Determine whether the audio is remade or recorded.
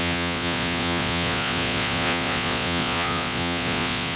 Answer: remade